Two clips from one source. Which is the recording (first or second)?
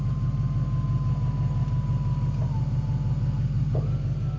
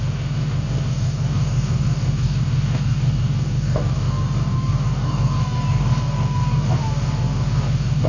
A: first